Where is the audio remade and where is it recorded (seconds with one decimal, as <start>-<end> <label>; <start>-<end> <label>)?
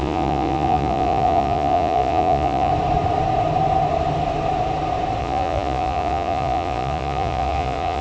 0.0-2.7 remade; 2.7-5.2 recorded; 5.2-8.0 remade